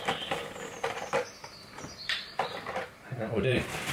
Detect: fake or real fake